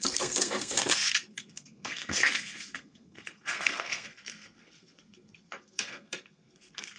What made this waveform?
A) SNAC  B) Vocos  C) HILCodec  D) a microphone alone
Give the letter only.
A